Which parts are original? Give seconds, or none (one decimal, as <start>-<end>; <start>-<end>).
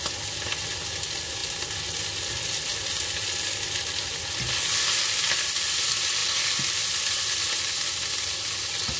0.0-9.0